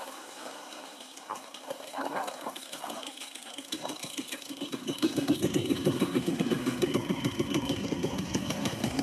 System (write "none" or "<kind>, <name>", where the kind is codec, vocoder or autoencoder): codec, SNAC